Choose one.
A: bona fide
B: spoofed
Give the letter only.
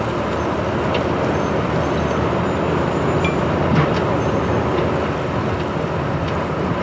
A